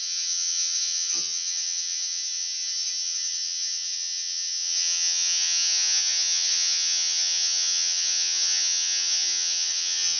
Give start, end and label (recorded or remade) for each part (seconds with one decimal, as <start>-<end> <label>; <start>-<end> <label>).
0.0-10.2 remade